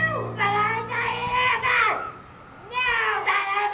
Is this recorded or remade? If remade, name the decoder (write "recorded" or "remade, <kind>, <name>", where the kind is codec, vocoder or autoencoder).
recorded